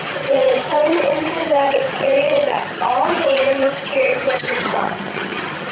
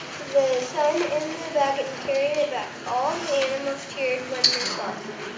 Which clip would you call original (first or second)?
second